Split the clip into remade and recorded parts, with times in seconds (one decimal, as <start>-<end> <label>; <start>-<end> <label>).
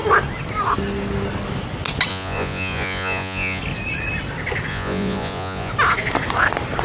0.0-2.1 recorded; 2.1-3.6 remade; 3.6-4.7 recorded; 4.7-5.7 remade; 5.7-6.8 recorded